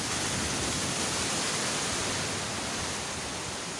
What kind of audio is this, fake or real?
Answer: real